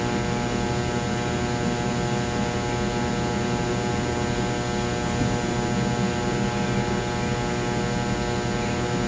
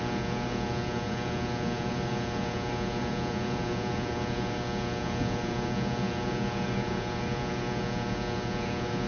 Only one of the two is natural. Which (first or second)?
first